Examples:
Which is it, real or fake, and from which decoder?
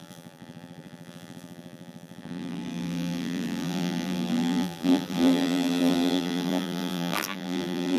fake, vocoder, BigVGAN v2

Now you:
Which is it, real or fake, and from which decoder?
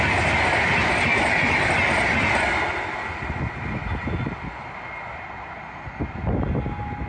real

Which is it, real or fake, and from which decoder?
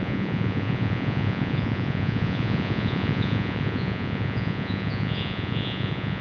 fake, vocoder, Vocos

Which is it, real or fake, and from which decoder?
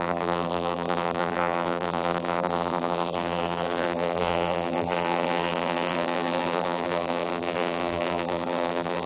fake, vocoder, BigVGAN v2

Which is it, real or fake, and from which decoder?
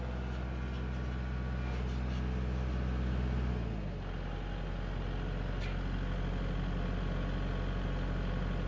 real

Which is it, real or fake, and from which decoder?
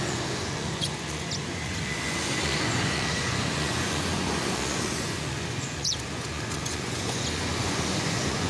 fake, vocoder, Vocos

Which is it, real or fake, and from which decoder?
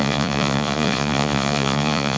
fake, vocoder, Vocos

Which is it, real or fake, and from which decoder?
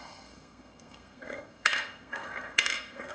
fake, codec, SNAC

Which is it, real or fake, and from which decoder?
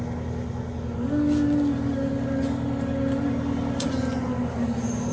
real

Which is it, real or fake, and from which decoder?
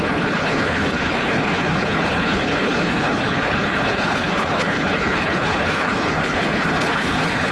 fake, codec, HILCodec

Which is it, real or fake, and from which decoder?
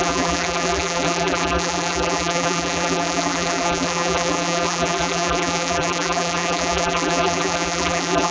fake, vocoder, BigVGAN v2